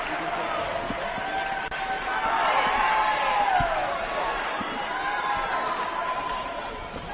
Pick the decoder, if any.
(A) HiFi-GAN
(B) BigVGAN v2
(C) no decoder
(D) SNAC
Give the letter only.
C